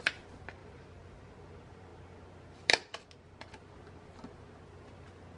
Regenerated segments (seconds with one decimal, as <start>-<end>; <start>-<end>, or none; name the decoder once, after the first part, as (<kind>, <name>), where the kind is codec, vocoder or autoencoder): 0.6-1.3 (vocoder, BigVGAN v2)